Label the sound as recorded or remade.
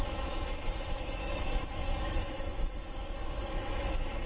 remade